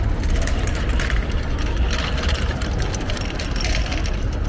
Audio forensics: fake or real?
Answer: real